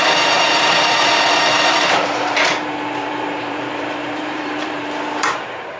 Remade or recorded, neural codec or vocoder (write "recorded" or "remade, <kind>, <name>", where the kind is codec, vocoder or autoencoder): remade, vocoder, BigVGAN v2